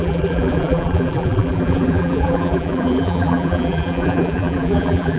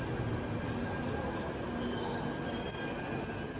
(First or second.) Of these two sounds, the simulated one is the first